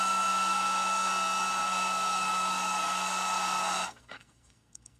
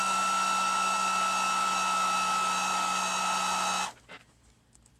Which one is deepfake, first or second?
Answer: first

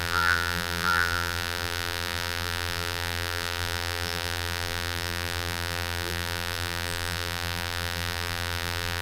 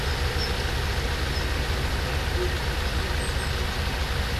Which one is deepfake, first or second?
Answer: first